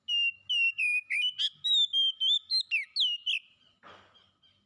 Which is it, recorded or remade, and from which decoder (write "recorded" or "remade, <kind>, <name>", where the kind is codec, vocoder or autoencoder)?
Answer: recorded